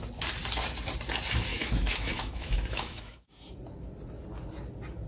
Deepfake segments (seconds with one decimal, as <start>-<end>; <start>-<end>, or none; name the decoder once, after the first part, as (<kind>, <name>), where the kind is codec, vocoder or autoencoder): 1.5-3.5 (autoencoder, DAC-VAE)